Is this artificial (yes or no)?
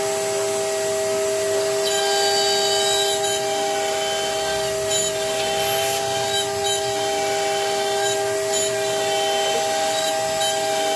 no